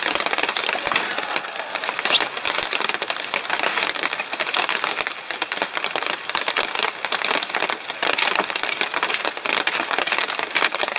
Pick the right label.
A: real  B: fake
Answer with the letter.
A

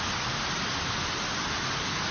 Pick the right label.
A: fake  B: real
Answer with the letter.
B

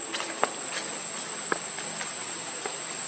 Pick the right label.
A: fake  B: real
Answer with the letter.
B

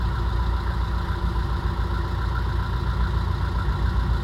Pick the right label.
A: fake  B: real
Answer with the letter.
B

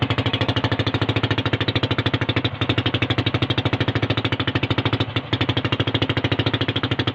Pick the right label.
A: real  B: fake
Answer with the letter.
A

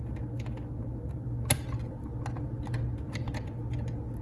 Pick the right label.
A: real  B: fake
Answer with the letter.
A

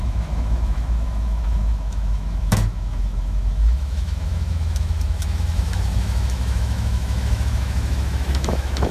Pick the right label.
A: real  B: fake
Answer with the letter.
B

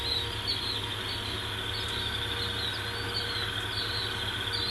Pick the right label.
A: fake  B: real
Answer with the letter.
B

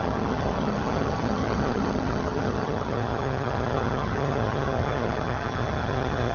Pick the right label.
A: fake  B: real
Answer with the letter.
A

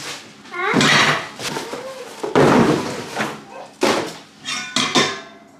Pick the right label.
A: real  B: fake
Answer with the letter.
A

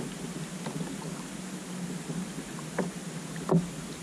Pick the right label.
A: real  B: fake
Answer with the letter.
A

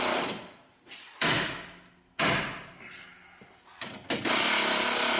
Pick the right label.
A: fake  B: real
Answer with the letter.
B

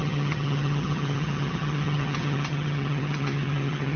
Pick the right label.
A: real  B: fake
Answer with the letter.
B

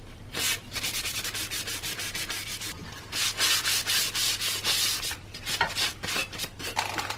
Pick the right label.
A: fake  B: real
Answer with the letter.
A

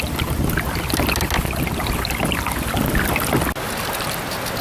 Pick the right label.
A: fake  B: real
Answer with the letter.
B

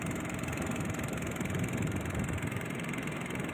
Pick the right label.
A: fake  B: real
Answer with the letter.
A